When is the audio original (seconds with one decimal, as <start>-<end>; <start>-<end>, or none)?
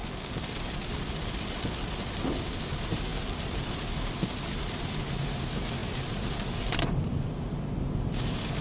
0.0-2.7; 3.1-3.9